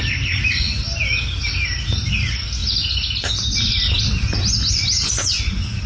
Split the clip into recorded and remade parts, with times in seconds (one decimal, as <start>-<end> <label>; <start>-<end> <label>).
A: 0.0-5.9 recorded